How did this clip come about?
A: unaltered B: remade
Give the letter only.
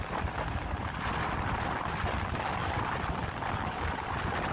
A